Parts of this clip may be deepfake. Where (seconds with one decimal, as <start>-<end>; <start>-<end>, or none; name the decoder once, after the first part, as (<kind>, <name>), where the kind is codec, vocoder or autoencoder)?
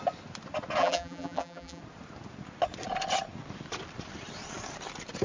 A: 0.8-1.8 (vocoder, BigVGAN v2)